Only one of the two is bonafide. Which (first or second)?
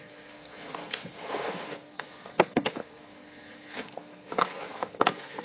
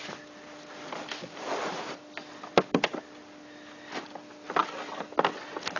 second